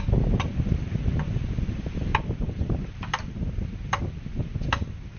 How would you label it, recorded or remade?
recorded